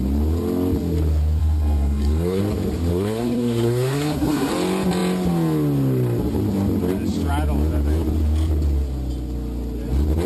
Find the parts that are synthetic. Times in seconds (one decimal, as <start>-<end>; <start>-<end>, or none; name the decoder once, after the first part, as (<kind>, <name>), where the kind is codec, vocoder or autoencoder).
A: 1.4-2.4 (codec, SNAC); 2.9-4.5